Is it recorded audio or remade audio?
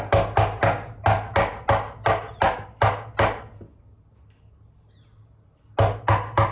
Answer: recorded